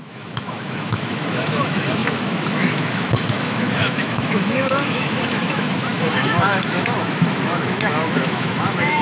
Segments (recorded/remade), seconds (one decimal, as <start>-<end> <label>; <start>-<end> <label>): 0.0-9.0 remade

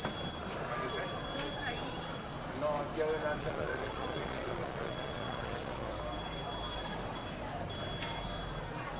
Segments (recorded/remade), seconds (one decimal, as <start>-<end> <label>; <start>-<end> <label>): 0.0-3.4 recorded; 3.4-5.9 remade; 5.9-9.0 recorded